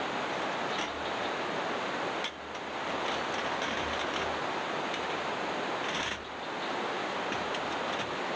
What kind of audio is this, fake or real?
real